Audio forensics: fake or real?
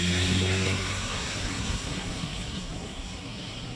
fake